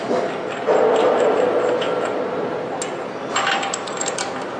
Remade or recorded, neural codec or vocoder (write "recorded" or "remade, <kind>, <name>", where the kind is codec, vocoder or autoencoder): recorded